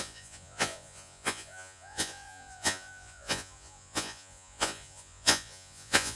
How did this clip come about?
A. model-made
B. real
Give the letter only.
A